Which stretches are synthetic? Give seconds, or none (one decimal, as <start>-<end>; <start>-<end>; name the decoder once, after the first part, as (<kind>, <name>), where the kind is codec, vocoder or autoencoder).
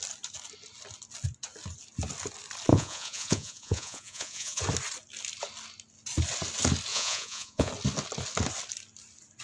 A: 2.7-4.6 (vocoder, Vocos); 6.9-7.7